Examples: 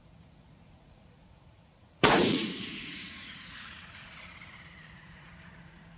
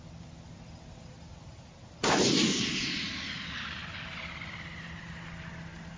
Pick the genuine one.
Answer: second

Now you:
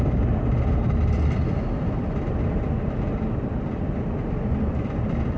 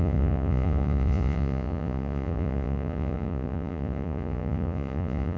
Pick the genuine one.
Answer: first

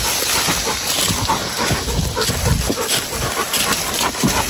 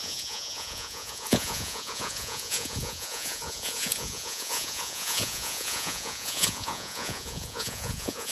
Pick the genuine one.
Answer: first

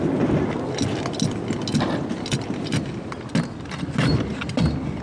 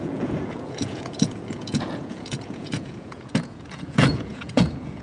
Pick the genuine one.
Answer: first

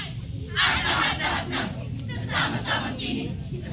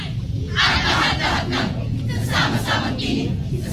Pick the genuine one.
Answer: first